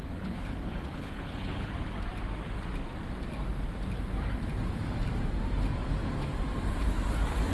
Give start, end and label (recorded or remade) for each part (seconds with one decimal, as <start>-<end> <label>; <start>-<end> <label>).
0.0-1.7 remade; 1.7-7.5 recorded